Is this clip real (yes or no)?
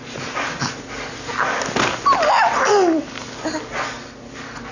yes